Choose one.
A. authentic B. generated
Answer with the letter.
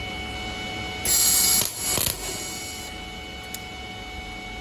A